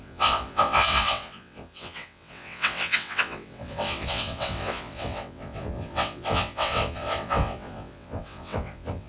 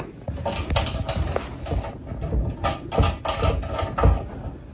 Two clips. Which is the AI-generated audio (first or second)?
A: first